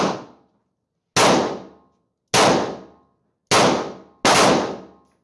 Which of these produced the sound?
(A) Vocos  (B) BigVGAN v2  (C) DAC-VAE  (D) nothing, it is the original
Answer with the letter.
D